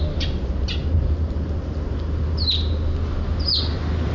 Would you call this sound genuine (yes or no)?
yes